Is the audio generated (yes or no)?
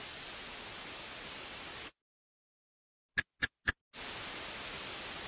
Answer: no